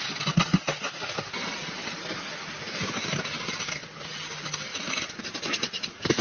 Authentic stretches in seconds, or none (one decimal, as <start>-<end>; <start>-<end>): 0.0-4.7; 5.2-6.2